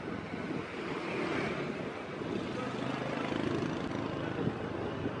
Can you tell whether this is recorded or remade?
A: recorded